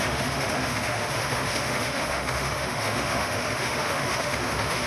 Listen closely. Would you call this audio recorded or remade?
remade